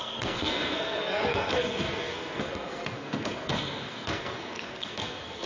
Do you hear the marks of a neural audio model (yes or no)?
yes